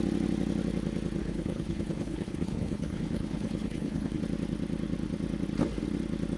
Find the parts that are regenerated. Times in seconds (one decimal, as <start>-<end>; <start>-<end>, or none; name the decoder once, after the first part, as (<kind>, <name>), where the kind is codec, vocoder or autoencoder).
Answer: 1.2-4.2 (codec, HILCodec)